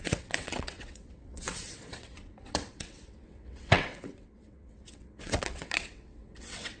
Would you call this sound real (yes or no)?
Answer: no